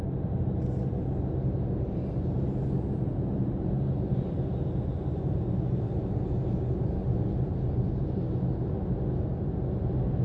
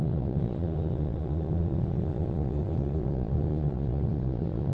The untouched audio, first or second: first